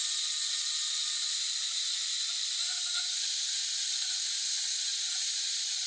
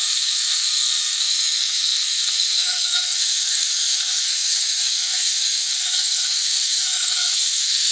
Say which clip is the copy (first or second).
second